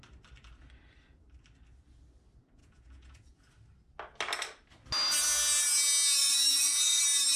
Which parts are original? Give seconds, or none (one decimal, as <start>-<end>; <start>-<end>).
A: 0.0-2.6; 3.4-6.2; 7.0-7.4